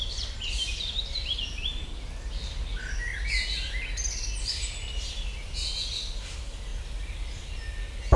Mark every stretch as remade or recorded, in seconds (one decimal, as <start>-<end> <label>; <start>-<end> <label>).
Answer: 0.0-6.7 recorded; 6.7-7.4 remade; 7.4-8.2 recorded